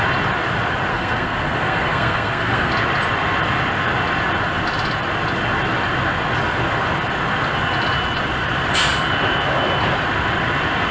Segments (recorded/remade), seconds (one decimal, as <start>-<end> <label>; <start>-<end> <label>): 0.0-0.9 recorded; 0.9-2.7 remade; 2.7-10.9 recorded